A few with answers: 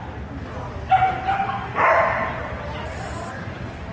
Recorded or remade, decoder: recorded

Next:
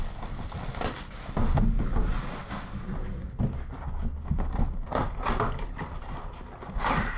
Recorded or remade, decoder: recorded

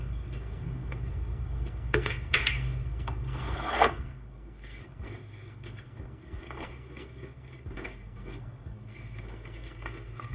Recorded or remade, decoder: remade, codec, SNAC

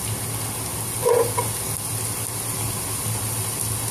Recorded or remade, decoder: recorded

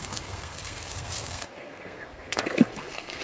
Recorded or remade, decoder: remade, codec, SNAC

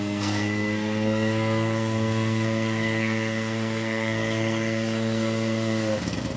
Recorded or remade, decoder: remade, codec, SNAC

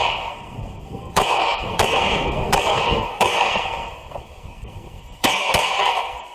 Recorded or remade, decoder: remade, codec, SNAC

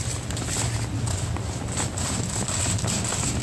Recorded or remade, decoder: recorded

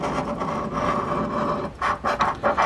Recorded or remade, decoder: recorded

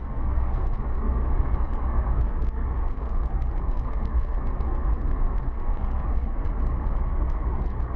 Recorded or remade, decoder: remade, codec, SNAC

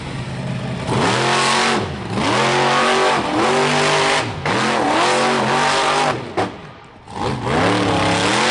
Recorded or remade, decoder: recorded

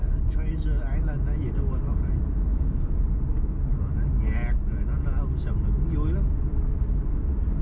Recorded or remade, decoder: recorded